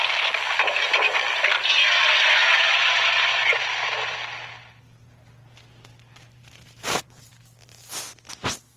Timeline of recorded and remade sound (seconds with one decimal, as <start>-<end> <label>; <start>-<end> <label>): 0.0-2.4 recorded; 2.4-3.6 remade; 3.6-5.9 recorded; 5.9-7.3 remade; 7.3-8.8 recorded